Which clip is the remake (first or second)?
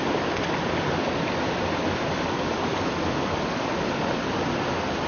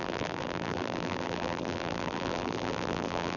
second